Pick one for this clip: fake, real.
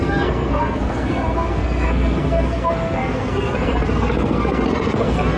fake